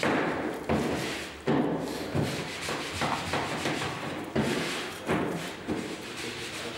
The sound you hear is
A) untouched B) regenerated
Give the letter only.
A